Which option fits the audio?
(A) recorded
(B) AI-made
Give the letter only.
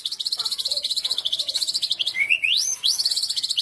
B